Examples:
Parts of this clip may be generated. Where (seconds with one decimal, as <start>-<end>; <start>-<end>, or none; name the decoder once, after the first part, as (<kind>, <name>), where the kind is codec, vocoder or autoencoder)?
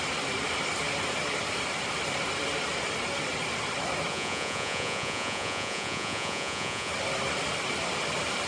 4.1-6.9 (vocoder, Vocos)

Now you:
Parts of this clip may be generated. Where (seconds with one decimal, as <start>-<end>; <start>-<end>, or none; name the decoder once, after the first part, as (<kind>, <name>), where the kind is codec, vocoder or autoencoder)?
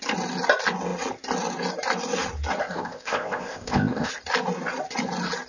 2.6-4.1 (codec, ZipCodec)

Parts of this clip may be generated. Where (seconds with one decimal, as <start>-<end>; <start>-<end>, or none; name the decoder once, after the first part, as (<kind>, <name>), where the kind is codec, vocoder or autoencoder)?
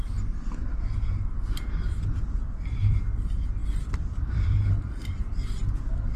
0.6-1.1 (vocoder, BigVGAN v2); 2.4-3.0; 3.6-6.2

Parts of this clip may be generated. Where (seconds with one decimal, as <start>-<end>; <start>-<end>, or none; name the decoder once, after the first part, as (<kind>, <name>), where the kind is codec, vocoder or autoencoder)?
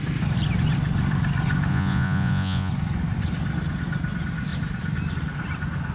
1.7-2.7 (vocoder, Vocos)